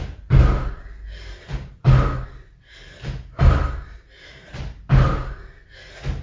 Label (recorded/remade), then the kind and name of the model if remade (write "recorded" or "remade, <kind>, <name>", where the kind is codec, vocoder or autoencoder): recorded